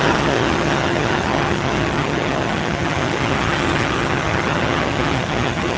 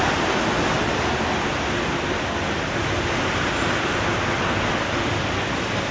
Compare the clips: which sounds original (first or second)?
second